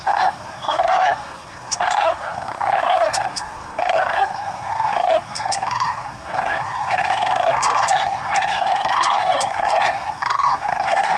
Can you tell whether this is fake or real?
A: fake